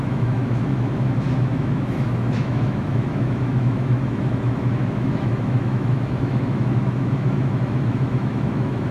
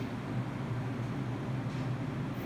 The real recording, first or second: second